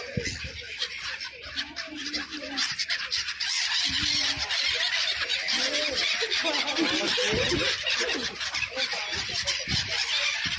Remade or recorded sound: recorded